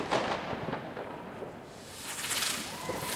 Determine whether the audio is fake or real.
fake